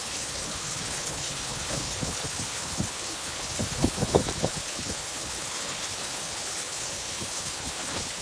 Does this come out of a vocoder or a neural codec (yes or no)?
yes